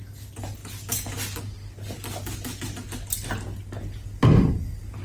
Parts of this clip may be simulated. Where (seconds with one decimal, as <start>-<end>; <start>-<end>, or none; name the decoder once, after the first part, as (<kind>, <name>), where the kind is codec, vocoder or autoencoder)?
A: none